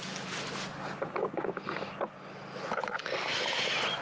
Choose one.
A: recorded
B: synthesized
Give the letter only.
A